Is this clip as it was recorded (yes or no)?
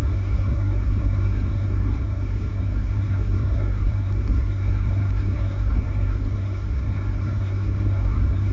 no